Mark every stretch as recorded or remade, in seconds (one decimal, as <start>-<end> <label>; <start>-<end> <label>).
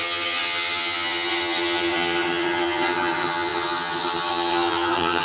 0.0-5.2 remade